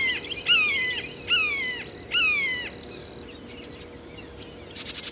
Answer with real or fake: real